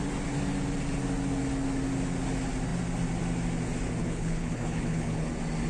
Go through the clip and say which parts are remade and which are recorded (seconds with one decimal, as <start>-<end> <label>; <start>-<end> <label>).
0.0-4.0 recorded; 4.0-5.3 remade; 5.3-5.7 recorded